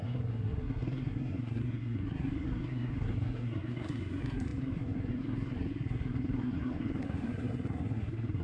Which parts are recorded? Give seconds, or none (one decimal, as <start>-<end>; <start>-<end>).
none